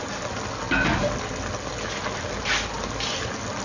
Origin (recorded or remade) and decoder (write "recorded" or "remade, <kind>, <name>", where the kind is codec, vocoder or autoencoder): recorded